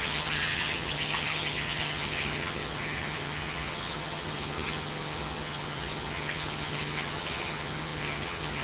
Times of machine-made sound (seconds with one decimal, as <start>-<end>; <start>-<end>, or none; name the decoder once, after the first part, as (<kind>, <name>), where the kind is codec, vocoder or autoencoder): 0.0-8.6 (vocoder, HiFi-GAN)